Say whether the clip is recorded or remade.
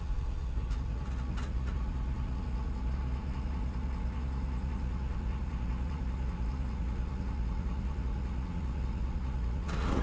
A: remade